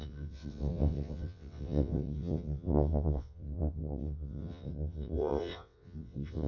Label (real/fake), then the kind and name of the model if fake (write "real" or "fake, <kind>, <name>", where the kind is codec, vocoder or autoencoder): fake, vocoder, WaveNeXt